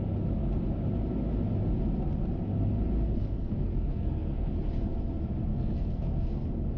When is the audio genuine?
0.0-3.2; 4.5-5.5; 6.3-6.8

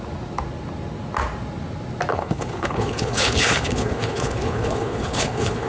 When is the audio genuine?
0.0-2.1

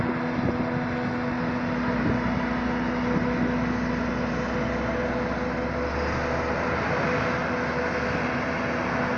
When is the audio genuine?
0.0-9.2

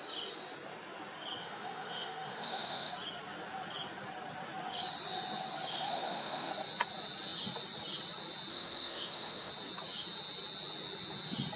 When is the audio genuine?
0.0-1.4; 2.9-5.7; 6.5-8.5; 9.5-11.6

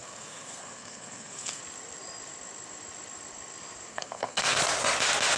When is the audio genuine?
1.6-3.9; 4.6-5.4